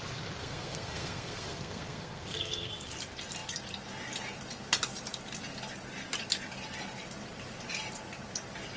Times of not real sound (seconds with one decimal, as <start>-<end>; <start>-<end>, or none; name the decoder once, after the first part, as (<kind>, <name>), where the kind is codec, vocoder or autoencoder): 0.4-2.7 (codec, SNAC)